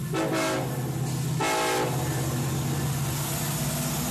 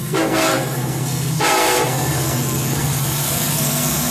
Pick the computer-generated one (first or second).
second